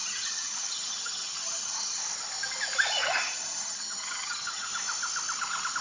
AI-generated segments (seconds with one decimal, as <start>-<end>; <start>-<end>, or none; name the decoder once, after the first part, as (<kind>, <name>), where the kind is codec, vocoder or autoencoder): 0.0-2.0 (vocoder, HiFi-GAN); 3.0-4.7